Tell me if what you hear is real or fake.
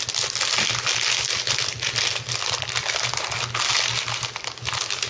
real